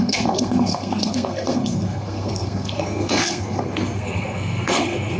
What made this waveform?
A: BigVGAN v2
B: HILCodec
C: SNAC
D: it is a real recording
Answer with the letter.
C